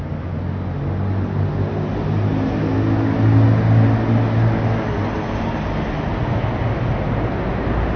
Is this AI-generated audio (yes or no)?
no